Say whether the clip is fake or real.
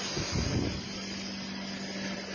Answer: real